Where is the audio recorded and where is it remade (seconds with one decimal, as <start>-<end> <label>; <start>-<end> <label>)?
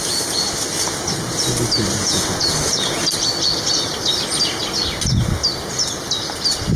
0.0-2.0 recorded; 2.0-3.1 remade; 3.1-6.8 recorded